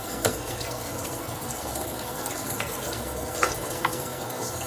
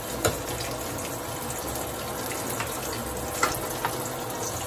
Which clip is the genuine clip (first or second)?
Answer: second